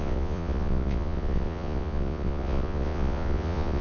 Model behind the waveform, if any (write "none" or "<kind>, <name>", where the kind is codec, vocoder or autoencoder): vocoder, Vocos